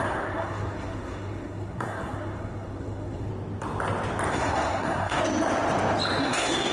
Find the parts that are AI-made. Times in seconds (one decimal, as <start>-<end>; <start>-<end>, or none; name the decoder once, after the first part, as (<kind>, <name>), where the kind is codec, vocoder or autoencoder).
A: 0.0-3.3 (codec, SNAC); 4.3-5.2; 6.2-6.7